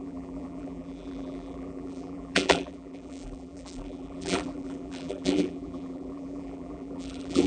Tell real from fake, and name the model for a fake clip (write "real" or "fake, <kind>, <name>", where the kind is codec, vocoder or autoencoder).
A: fake, vocoder, BigVGAN v2